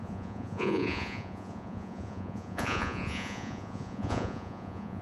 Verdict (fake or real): fake